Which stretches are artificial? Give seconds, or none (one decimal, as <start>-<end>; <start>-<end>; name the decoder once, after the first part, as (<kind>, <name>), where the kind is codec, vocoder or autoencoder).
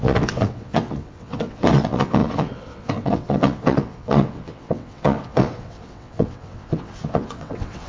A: 0.0-7.9 (vocoder, WaveNeXt)